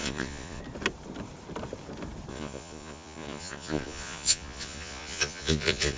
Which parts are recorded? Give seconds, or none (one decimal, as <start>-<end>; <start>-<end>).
0.6-2.3